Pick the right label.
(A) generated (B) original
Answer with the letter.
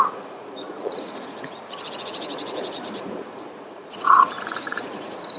A